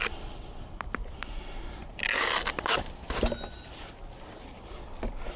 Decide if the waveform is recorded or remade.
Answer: recorded